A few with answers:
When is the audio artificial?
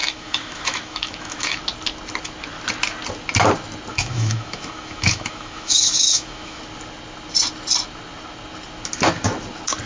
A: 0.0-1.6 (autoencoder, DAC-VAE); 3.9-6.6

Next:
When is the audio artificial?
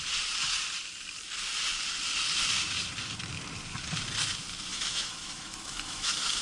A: 4.7-6.4 (autoencoder, DAC-VAE)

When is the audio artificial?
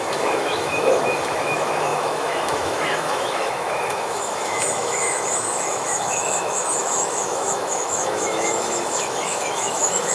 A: 0.0-10.1 (autoencoder, DAC-VAE)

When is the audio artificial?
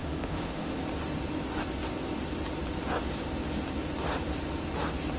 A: 0.0-0.8 (autoencoder, DAC-VAE)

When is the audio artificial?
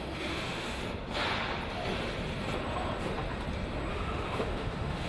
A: 0.0-0.8 (autoencoder, DAC-VAE); 3.9-5.1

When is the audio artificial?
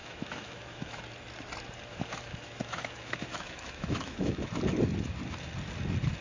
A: 0.0-1.0 (autoencoder, DAC-VAE); 1.9-4.5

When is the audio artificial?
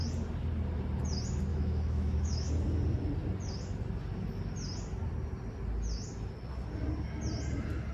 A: 1.5-2.5 (autoencoder, DAC-VAE)